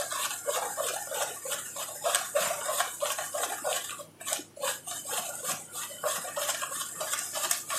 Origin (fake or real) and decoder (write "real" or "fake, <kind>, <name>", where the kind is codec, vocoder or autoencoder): real